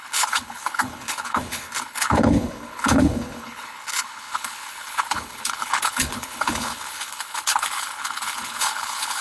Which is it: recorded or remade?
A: remade